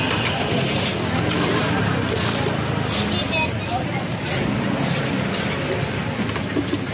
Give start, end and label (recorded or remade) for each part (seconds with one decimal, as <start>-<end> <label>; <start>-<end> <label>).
0.0-6.9 recorded